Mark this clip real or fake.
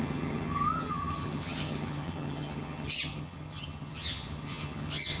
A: fake